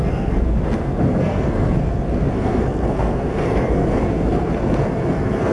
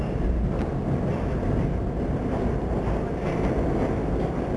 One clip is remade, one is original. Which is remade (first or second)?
first